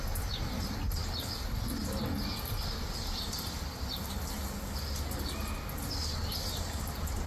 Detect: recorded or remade recorded